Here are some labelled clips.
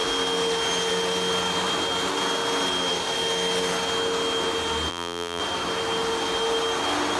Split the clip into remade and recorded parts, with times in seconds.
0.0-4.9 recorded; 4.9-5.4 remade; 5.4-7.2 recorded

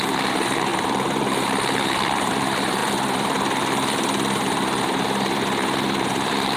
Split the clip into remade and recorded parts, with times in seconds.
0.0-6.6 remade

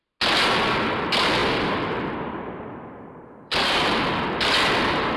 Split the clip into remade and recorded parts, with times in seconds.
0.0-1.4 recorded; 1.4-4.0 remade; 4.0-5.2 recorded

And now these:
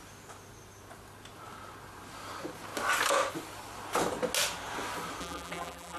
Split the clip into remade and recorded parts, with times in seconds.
0.0-5.2 recorded; 5.2-6.0 remade

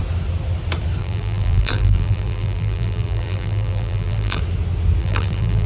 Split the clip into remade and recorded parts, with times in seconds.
0.0-1.0 recorded; 1.0-4.4 remade; 4.4-5.0 recorded; 5.0-5.7 remade